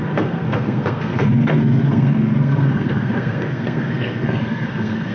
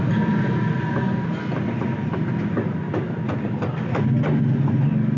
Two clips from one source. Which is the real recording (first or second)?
second